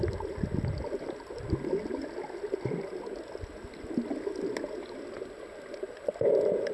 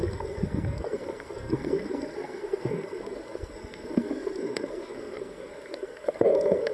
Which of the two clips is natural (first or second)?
first